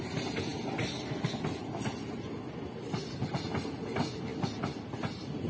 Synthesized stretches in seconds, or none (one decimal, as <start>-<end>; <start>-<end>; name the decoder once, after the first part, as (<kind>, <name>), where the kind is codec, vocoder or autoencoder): none